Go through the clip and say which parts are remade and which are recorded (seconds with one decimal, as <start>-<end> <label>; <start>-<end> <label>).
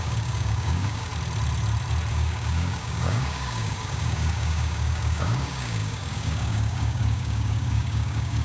0.0-1.1 remade; 1.1-2.1 recorded; 2.1-8.4 remade